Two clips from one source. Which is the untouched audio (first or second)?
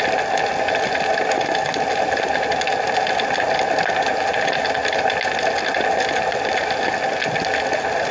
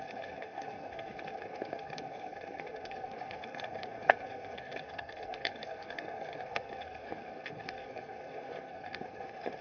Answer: first